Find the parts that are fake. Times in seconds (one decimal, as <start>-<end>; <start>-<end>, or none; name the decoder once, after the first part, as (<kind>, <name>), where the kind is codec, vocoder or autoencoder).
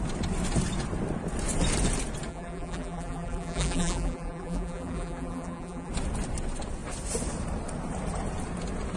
2.3-5.9 (vocoder, BigVGAN v2)